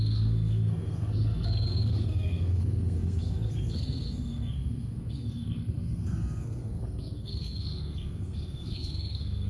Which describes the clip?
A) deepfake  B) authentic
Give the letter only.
A